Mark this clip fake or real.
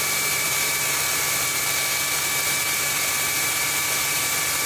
fake